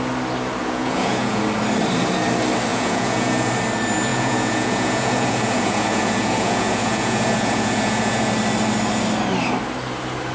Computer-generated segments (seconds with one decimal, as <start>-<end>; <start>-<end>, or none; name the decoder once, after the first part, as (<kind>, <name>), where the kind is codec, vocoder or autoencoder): 0.6-1.4 (vocoder, Vocos); 2.7-3.5; 4.1-8.3